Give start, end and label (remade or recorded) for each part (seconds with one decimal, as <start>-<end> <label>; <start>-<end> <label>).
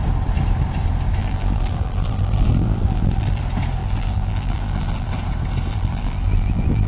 0.0-1.2 recorded; 1.2-3.4 remade; 3.4-3.8 recorded; 3.8-5.1 remade; 5.1-5.7 recorded; 5.7-6.9 remade